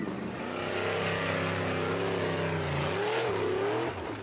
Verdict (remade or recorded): recorded